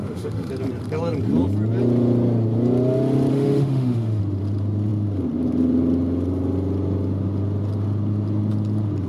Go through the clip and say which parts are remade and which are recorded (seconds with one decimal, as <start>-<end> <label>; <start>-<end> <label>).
0.0-0.5 remade; 0.5-3.3 recorded; 3.3-4.2 remade; 4.2-9.1 recorded